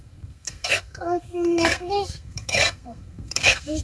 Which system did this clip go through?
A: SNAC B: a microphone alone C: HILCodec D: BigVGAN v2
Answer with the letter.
A